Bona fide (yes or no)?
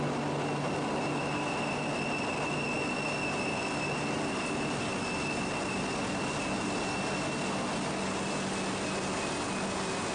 yes